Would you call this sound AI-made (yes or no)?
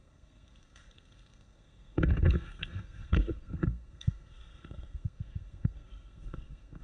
yes